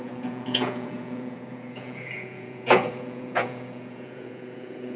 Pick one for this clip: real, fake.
fake